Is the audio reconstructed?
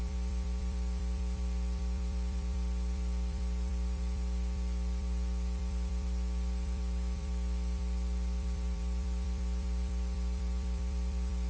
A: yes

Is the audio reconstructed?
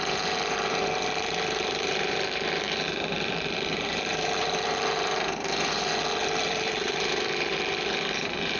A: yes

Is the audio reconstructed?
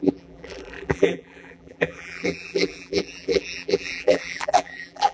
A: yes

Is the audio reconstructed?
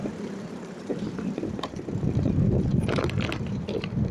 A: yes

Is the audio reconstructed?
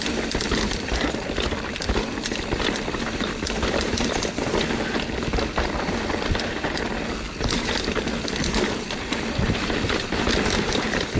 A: yes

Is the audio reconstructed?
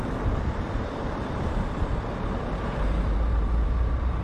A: yes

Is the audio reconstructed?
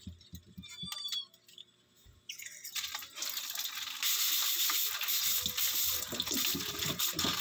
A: no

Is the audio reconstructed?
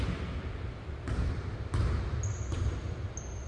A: no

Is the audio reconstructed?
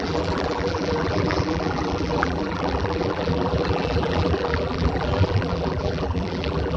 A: yes